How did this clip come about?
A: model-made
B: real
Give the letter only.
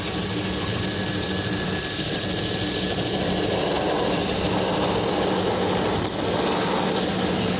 B